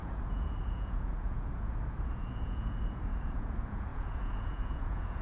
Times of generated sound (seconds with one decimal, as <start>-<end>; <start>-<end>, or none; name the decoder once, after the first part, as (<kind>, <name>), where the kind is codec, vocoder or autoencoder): 0.0-5.2 (vocoder, Vocos)